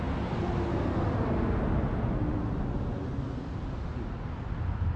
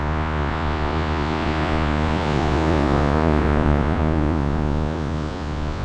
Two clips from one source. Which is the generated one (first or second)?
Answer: second